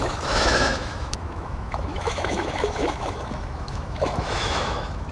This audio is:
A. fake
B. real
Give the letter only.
A